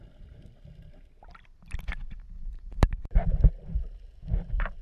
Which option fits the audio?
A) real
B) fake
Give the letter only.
A